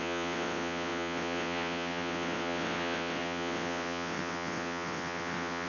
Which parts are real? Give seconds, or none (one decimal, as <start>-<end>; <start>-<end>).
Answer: none